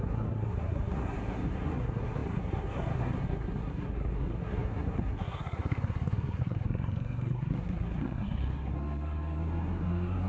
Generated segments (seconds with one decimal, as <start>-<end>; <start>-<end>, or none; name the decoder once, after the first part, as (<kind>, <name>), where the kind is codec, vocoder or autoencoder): 0.0-10.3 (codec, SNAC)